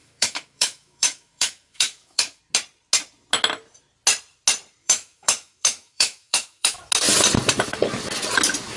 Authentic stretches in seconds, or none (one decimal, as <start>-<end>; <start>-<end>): 2.4-4.8; 6.8-8.8